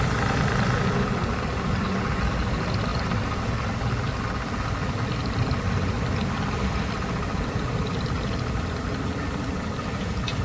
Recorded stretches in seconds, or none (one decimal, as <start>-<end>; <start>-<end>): 0.0-10.4